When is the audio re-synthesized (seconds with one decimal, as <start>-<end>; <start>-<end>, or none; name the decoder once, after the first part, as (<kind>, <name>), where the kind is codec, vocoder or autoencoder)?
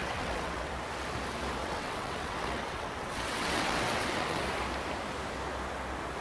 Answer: 0.0-0.7 (vocoder, WaveNeXt); 1.6-4.4